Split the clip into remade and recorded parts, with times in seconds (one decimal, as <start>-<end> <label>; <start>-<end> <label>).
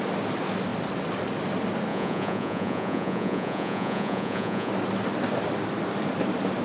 0.0-1.9 recorded; 1.9-4.7 remade; 4.7-6.6 recorded